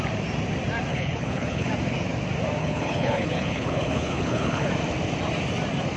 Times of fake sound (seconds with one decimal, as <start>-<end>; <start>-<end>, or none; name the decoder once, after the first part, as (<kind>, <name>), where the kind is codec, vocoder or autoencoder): 0.9-1.7 (codec, HILCodec); 2.6-4.7